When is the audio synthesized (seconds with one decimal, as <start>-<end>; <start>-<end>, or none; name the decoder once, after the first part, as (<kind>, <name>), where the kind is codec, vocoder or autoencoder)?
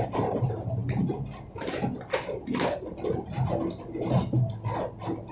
none